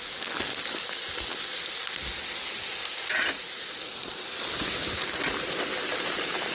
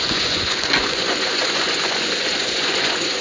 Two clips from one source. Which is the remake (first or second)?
second